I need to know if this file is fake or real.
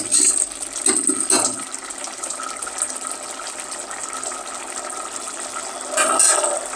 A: real